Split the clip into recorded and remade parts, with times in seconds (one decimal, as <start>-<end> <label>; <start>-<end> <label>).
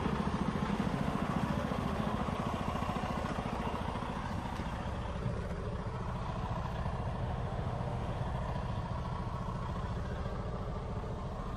0.0-0.7 recorded; 0.7-2.3 remade; 2.3-7.2 recorded; 7.2-8.2 remade; 8.2-11.6 recorded